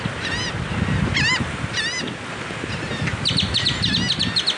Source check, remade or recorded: recorded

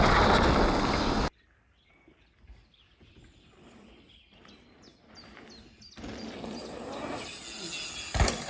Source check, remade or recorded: recorded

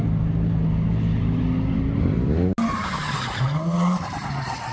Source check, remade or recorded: recorded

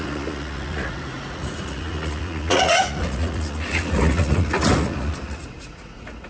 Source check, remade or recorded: remade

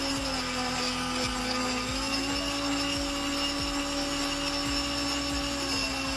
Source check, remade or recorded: recorded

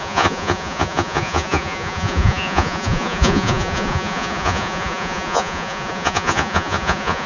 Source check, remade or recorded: remade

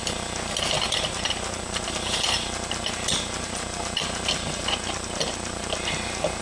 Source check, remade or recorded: recorded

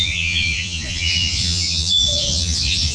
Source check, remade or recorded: remade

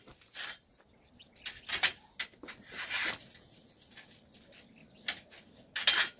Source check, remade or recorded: recorded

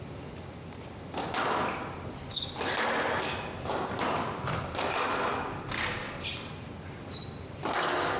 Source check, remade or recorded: recorded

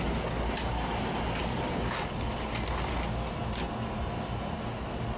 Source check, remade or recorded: recorded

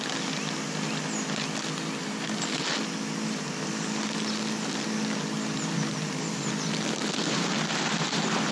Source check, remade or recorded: recorded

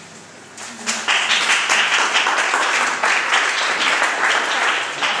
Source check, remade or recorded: recorded